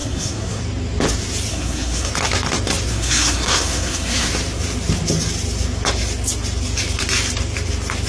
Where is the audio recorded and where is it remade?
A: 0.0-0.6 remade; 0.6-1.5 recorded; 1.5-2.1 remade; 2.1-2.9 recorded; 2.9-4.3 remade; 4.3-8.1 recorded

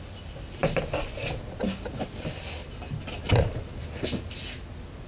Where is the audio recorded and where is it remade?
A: 0.0-5.1 recorded